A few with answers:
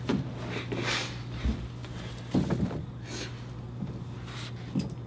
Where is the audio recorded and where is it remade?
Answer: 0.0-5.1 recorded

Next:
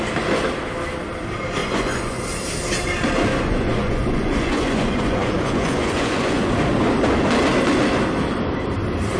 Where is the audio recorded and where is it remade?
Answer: 0.0-1.6 recorded; 1.6-2.2 remade; 2.2-3.3 recorded; 3.3-6.5 remade; 6.5-9.2 recorded

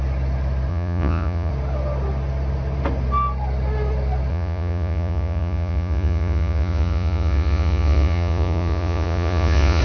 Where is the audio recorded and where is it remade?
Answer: 0.0-0.7 recorded; 0.7-1.5 remade; 1.5-4.3 recorded; 4.3-9.8 remade